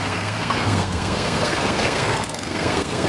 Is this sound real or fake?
fake